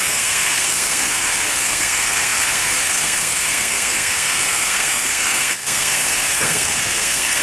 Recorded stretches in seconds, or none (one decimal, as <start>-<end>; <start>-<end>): none